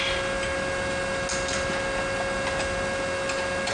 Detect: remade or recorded recorded